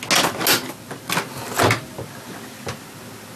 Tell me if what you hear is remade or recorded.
recorded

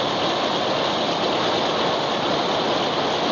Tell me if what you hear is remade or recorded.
recorded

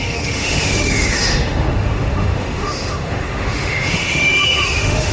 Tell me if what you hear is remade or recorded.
remade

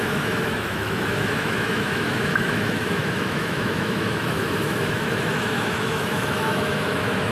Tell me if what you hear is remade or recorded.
remade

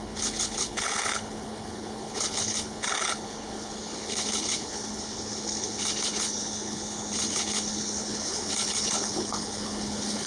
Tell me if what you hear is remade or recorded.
remade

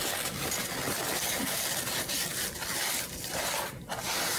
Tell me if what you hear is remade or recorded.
recorded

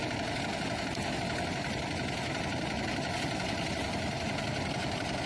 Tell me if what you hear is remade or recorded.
recorded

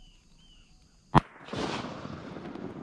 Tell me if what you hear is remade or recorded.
recorded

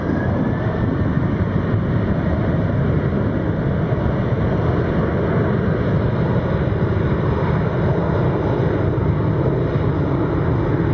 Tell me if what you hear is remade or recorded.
recorded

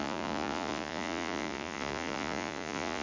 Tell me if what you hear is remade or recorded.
remade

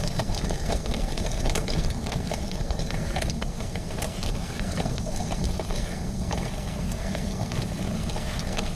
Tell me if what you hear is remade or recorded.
remade